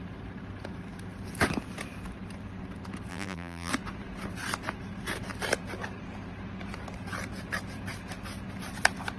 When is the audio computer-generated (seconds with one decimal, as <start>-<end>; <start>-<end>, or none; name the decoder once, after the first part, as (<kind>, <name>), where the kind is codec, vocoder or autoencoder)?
3.1-3.7 (vocoder, BigVGAN v2)